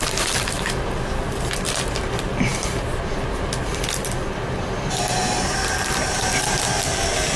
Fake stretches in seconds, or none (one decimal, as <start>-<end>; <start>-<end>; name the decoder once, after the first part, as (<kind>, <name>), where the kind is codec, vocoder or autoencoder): none